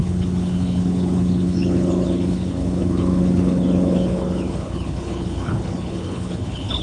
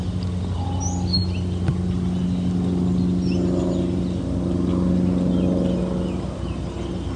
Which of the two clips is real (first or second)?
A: second